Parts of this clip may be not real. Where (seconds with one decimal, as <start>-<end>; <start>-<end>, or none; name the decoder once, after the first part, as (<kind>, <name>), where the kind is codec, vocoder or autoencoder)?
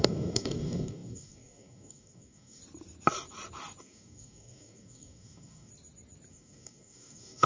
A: 0.0-2.6 (codec, DAC); 3.8-5.7; 6.3-7.5